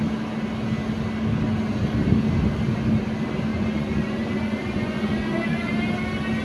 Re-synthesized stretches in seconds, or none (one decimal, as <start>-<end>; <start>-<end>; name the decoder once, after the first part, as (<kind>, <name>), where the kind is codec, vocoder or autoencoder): 3.5-5.7 (vocoder, Vocos)